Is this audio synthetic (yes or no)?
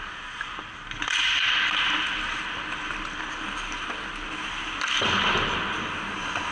no